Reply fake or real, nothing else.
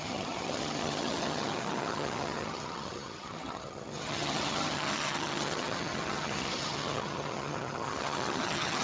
fake